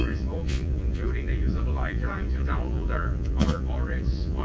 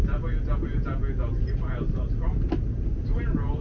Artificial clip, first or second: first